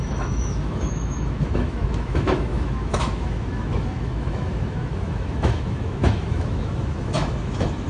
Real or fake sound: fake